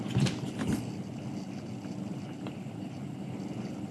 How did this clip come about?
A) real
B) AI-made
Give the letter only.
A